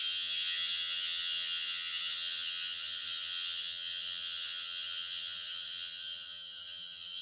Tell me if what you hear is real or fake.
fake